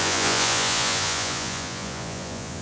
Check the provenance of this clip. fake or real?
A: fake